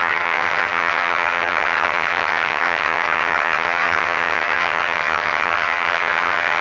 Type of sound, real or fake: fake